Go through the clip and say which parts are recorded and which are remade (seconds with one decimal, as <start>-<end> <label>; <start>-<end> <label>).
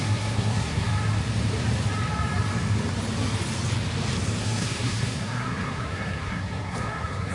0.0-0.9 remade; 0.9-4.4 recorded; 4.4-7.3 remade